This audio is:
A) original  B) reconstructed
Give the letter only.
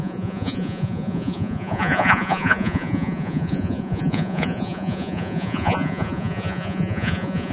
B